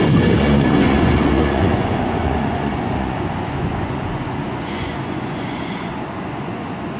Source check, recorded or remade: remade